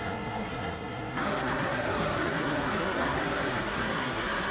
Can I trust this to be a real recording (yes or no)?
no